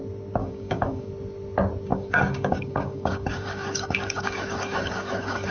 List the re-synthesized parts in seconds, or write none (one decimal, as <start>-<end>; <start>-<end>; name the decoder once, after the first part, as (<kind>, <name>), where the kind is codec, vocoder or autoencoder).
0.4-1.1 (codec, DAC); 1.9-5.5